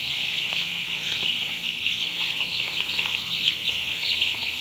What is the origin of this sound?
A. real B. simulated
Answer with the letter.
B